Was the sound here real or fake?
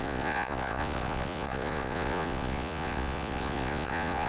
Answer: fake